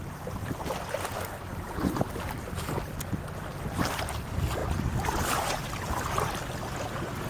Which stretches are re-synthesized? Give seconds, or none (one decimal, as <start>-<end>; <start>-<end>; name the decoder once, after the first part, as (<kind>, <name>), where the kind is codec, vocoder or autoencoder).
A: 0.4-3.6 (vocoder, BigVGAN v2)